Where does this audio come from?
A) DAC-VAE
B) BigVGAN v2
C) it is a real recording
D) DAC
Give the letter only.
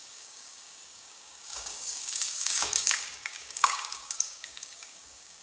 D